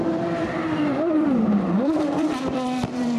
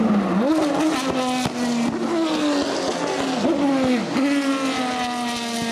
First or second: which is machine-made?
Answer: first